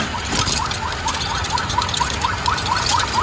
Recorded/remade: recorded